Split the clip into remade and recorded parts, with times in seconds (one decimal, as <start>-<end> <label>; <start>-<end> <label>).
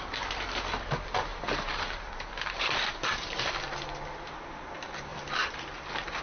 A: 0.0-1.3 recorded; 1.3-3.5 remade; 3.5-5.1 recorded; 5.1-6.2 remade